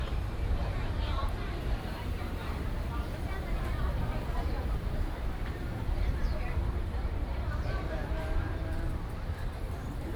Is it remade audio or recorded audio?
remade